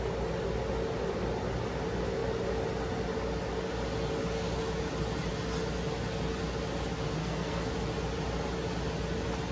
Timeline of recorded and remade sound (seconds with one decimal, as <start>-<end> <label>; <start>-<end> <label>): 0.0-7.2 recorded; 7.2-7.7 remade; 7.7-9.5 recorded